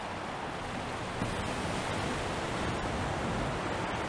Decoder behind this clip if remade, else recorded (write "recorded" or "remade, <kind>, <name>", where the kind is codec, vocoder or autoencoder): recorded